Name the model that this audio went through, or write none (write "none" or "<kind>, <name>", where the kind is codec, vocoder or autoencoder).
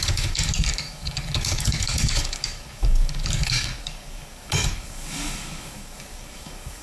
codec, DAC